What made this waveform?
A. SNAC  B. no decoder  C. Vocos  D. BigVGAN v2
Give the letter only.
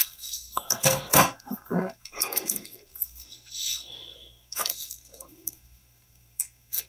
A